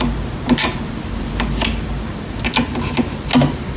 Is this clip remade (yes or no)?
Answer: no